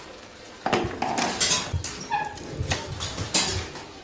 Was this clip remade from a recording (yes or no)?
no